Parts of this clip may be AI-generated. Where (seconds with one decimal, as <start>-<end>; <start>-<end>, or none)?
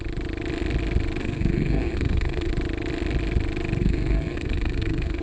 1.2-2.5; 3.8-5.2